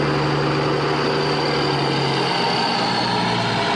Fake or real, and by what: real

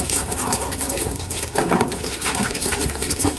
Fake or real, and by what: fake, codec, SNAC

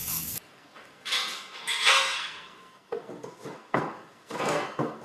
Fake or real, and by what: fake, codec, SNAC